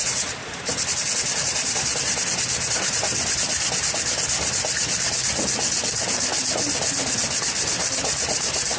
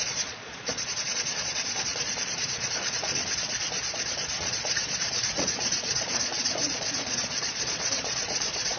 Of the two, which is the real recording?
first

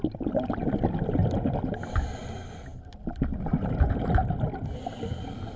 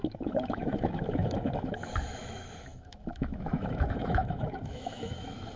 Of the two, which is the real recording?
first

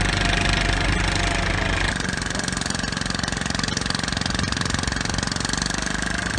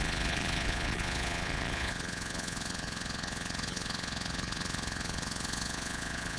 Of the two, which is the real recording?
first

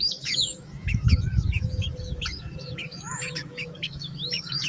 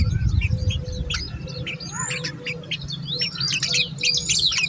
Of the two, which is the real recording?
second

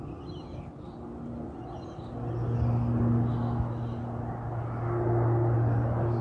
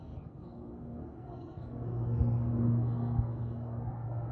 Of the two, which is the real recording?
first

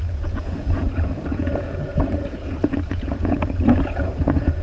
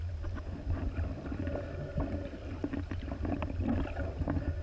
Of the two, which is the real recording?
second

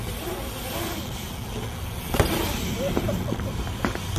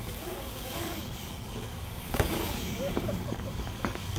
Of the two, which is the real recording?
first